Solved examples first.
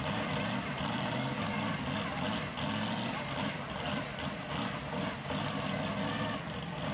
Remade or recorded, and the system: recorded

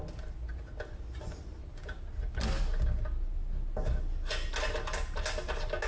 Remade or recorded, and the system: recorded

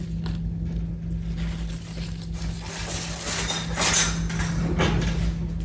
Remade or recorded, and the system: recorded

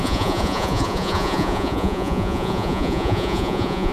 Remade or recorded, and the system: remade, vocoder, Vocos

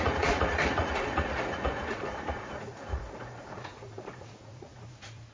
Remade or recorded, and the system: remade, vocoder, Vocos